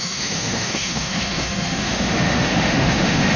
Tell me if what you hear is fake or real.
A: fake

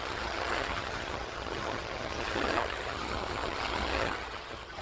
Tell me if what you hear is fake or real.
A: fake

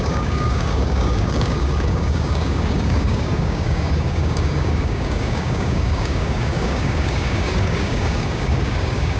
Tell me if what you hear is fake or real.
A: fake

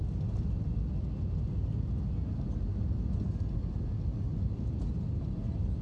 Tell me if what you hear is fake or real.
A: real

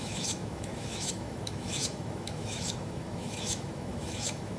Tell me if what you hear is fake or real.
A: fake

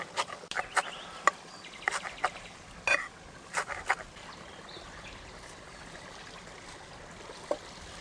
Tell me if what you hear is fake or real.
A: real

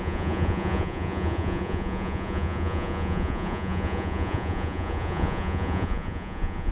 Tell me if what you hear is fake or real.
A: fake